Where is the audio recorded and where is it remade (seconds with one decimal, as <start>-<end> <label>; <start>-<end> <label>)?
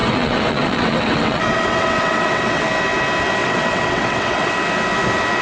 0.0-2.7 remade; 2.7-3.4 recorded; 3.4-4.5 remade; 4.5-5.4 recorded